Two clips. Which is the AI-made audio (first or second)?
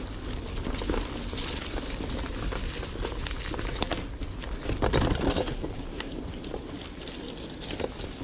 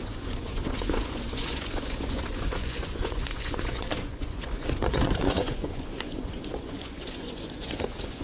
second